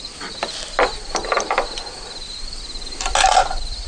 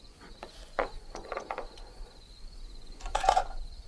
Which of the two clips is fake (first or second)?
second